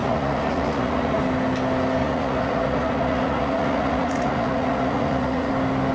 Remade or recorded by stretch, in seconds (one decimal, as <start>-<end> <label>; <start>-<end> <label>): 0.0-1.2 remade; 1.2-2.0 recorded; 2.0-5.5 remade; 5.5-5.9 recorded